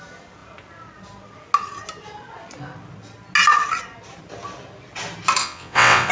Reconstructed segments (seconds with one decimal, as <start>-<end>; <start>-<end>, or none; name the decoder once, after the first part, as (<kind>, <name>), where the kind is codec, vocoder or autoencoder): 5.4-6.1 (vocoder, WaveNeXt)